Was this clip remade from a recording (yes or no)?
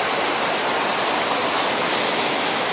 no